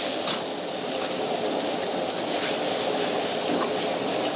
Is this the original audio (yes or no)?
yes